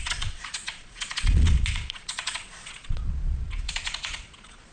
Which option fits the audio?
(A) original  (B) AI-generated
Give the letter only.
B